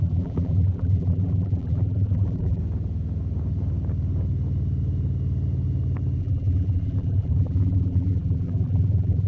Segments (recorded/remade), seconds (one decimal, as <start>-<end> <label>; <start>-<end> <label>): 0.0-2.6 remade; 2.6-6.2 recorded; 6.2-9.3 remade